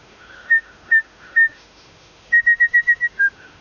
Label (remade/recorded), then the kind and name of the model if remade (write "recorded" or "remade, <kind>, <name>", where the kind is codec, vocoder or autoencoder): remade, autoencoder, DAC-VAE